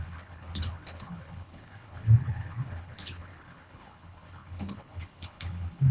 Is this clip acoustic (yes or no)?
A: no